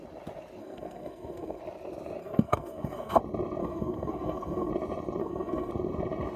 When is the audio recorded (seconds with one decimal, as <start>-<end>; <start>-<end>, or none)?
0.0-0.6; 1.6-2.2; 3.2-3.6; 4.7-5.2; 5.7-6.4